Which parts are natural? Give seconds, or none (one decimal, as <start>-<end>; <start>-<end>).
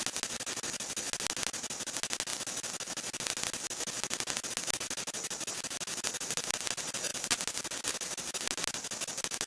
0.0-9.5